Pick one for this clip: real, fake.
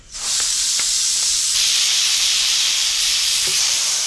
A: fake